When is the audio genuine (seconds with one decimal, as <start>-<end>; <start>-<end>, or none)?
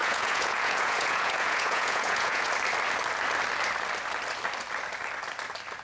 2.5-5.8